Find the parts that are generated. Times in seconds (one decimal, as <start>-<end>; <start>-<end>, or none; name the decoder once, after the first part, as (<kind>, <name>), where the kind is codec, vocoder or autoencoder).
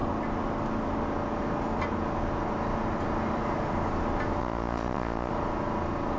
4.4-5.3 (vocoder, Vocos)